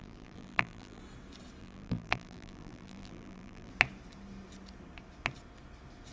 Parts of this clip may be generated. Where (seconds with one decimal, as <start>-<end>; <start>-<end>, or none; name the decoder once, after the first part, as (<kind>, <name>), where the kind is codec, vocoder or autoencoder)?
0.0-1.0 (vocoder, BigVGAN v2); 1.6-3.7

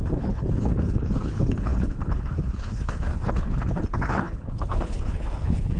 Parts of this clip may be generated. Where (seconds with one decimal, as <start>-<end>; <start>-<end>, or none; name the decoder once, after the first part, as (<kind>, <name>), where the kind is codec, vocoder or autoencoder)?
0.0-5.8 (codec, HILCodec)

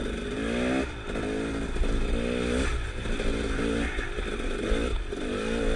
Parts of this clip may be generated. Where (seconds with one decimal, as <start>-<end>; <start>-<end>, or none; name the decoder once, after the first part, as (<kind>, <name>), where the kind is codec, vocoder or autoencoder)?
none

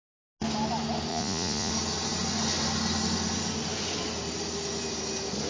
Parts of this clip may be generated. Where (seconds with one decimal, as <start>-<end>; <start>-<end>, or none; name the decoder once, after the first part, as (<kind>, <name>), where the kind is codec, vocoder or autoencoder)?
1.1-1.7 (vocoder, Vocos)

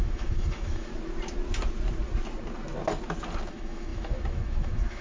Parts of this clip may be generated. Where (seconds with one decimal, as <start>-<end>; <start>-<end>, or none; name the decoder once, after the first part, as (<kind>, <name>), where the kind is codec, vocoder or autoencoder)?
0.0-0.9 (autoencoder, DAC-VAE); 3.5-5.0

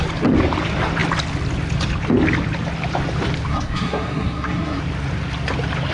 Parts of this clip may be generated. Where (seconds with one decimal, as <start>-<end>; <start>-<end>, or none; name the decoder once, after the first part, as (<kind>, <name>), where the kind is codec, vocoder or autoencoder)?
3.5-4.8 (codec, SNAC)

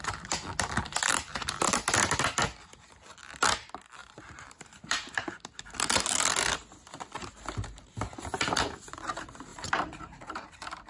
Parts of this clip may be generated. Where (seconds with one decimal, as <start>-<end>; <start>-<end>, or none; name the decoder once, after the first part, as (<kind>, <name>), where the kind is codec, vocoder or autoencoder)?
4.0-5.1 (vocoder, BigVGAN v2); 9.5-10.5